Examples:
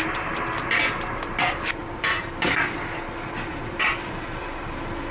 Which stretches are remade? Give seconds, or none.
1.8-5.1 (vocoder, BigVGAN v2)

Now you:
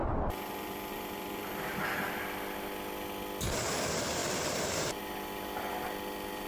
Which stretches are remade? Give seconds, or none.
0.0-2.1 (vocoder, BigVGAN v2); 4.2-5.0

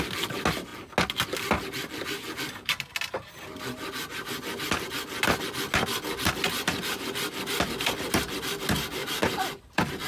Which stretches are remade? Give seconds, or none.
9.0-10.1 (vocoder, BigVGAN v2)

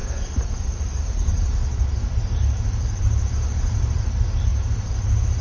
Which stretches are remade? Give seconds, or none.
0.5-5.4 (vocoder, BigVGAN v2)

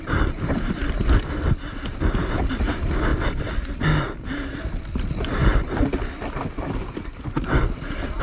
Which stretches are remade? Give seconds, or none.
0.0-0.8 (vocoder, BigVGAN v2); 2.3-3.1; 5.0-5.5

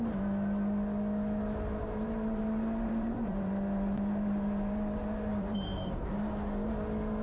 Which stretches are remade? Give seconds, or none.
1.8-6.1 (vocoder, BigVGAN v2)